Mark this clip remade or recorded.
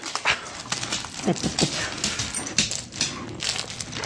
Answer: recorded